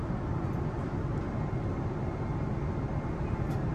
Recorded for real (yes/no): yes